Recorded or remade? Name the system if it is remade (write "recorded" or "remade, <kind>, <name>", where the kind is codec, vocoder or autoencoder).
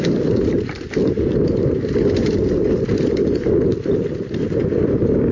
remade, vocoder, BigVGAN v2